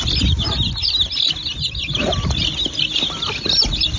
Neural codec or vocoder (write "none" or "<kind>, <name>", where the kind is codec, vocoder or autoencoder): none